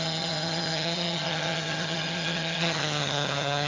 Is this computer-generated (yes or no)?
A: yes